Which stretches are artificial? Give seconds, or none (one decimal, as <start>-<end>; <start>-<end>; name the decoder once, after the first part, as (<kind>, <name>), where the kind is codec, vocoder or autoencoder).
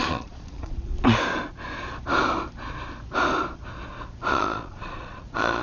0.0-0.9 (vocoder, Vocos); 4.3-5.6